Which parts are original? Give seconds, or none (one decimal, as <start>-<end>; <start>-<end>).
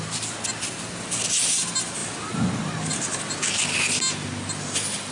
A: 0.0-5.1